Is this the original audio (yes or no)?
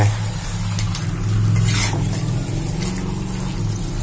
yes